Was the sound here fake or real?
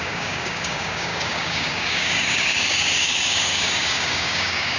fake